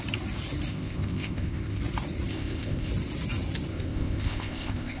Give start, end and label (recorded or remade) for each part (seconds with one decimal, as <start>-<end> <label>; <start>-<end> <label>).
0.0-0.7 recorded; 0.7-1.8 remade; 1.8-2.3 recorded; 2.3-2.9 remade; 2.9-3.7 recorded; 3.7-5.0 remade